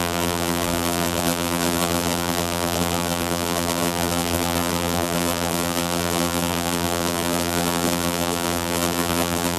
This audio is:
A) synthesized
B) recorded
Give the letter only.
A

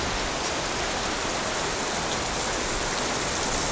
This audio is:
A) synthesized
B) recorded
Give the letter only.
B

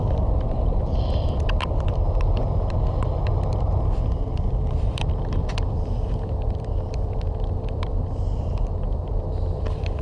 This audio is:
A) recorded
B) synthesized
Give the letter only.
B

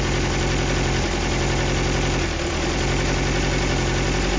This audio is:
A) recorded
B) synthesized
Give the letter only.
B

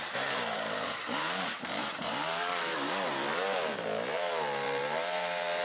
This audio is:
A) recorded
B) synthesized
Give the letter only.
B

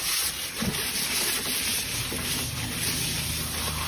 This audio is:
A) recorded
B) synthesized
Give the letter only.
A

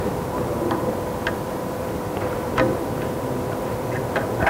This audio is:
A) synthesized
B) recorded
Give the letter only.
A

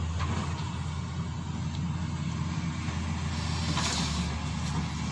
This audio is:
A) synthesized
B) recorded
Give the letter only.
B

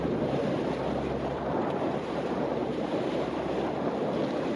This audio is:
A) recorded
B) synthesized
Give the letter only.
B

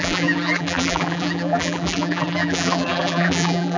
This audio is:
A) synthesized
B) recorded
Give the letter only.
A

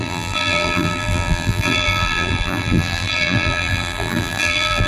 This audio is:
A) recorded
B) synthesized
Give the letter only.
B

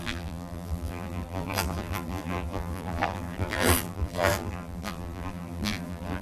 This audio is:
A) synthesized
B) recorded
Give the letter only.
A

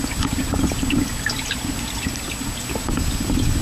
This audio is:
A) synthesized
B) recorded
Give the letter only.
B